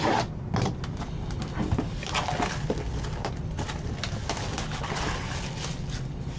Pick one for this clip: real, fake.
real